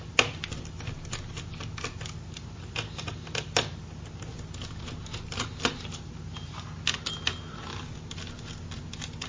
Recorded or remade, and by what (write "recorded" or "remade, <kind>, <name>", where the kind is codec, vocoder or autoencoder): recorded